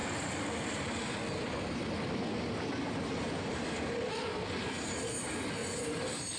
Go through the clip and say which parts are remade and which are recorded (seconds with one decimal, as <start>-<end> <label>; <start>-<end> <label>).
0.0-5.6 recorded; 5.6-6.4 remade